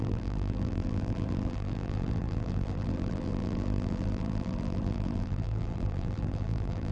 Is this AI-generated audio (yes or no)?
yes